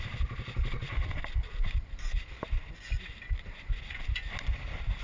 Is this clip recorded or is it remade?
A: recorded